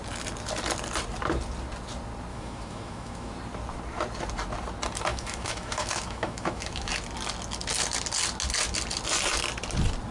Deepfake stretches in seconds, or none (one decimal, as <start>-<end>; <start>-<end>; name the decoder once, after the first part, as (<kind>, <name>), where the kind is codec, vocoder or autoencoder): 2.3-3.3 (autoencoder, DAC-VAE); 5.1-6.9

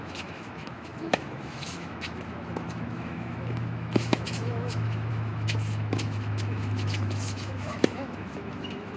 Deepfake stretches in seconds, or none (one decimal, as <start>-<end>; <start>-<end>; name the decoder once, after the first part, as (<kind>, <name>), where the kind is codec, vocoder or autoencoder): 0.0-9.0 (autoencoder, DAC-VAE)

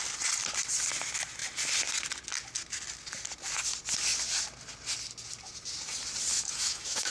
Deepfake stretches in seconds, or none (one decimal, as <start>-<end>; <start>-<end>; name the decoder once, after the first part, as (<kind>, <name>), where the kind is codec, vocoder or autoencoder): 6.3-7.1 (autoencoder, DAC-VAE)

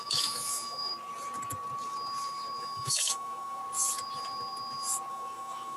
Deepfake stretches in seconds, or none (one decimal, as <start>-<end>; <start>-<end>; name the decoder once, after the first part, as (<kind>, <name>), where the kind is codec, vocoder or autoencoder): 0.0-0.9 (autoencoder, DAC-VAE); 2.6-3.6; 5.1-5.8